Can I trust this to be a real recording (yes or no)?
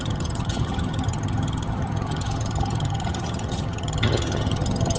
no